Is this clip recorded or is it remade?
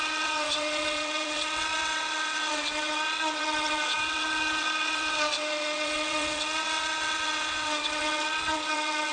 remade